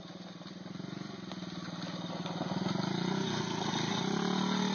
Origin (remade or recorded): recorded